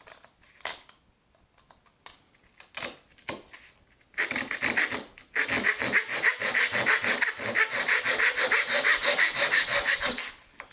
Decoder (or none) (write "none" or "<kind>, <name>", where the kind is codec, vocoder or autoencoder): none